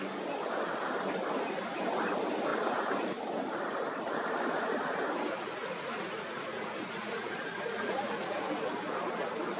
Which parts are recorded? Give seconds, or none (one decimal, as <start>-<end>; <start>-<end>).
0.0-5.6; 8.5-9.6